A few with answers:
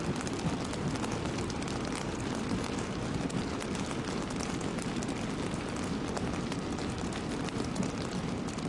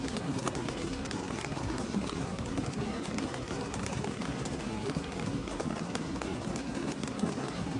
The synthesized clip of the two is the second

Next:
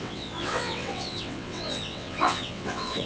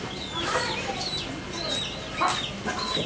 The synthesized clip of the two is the first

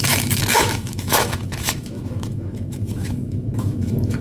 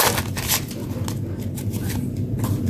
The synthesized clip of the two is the first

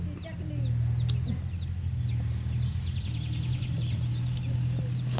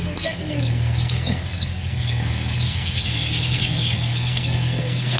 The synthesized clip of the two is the second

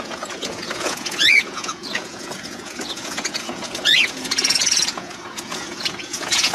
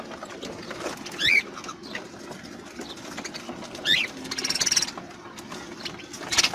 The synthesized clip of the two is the first